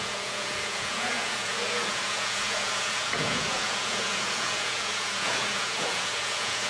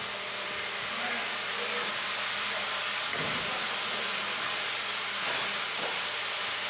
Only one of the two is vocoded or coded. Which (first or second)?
first